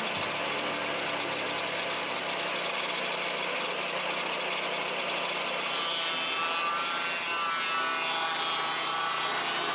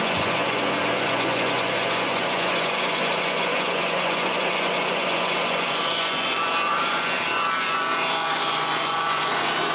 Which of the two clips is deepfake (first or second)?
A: second